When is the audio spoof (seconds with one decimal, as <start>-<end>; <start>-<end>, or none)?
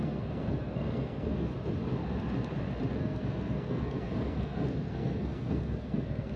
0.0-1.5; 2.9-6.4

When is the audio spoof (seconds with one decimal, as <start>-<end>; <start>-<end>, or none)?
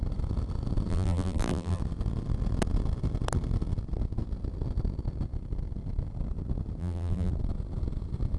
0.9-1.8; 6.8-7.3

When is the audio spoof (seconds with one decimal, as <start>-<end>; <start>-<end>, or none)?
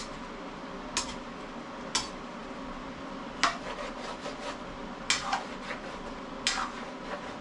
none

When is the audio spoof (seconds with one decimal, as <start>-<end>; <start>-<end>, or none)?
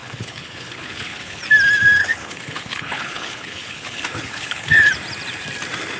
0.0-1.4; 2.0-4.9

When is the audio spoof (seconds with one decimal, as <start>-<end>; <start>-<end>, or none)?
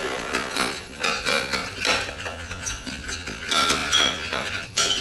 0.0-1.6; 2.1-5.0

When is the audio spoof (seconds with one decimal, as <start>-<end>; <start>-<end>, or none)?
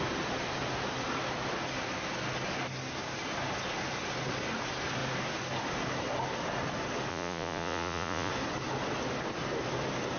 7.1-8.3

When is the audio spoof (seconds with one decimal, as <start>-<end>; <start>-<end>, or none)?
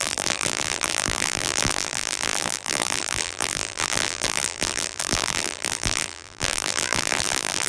0.0-7.7